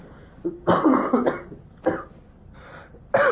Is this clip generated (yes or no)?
no